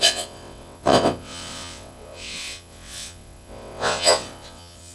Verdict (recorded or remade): remade